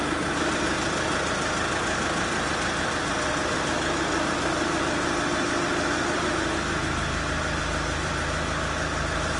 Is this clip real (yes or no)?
yes